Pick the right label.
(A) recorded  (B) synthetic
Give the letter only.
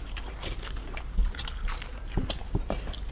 A